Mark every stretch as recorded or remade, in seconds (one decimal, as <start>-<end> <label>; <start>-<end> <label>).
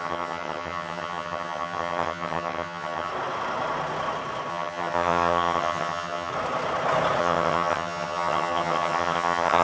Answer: 0.0-3.1 remade; 3.1-4.5 recorded; 4.5-6.3 remade; 6.3-7.2 recorded; 7.2-9.6 remade